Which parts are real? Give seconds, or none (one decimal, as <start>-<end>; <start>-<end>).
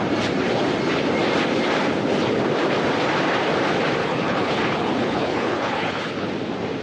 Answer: 0.0-4.0; 6.3-6.8